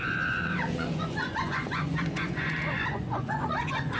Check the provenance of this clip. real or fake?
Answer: fake